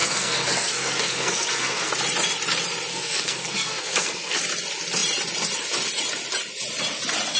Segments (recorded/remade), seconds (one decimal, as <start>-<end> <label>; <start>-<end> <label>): 0.0-1.9 remade; 1.9-2.9 recorded; 2.9-4.4 remade; 4.4-7.4 recorded